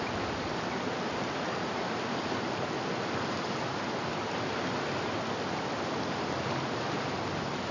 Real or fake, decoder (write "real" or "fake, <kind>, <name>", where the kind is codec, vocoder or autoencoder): real